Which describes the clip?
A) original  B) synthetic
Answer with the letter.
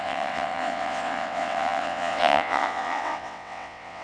B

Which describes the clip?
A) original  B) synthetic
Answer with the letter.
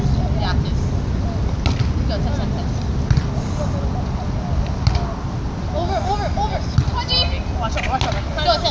A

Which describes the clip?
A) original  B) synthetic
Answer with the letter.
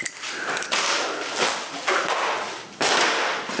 A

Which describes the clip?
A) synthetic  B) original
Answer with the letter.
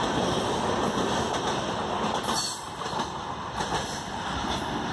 B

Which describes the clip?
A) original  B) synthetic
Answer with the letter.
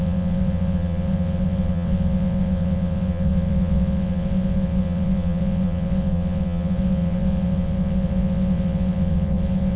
B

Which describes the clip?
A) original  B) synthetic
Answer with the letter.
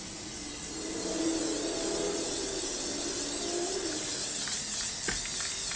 A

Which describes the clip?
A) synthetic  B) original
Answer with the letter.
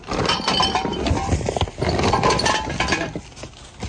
B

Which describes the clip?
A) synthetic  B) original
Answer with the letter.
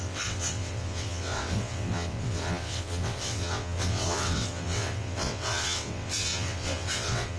A